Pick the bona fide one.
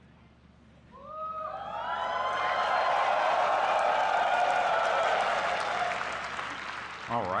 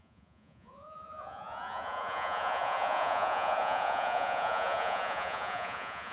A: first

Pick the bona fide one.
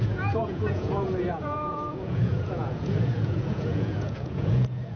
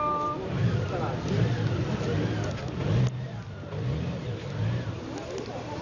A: second